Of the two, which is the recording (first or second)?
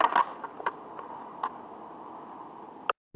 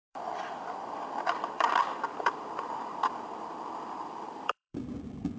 first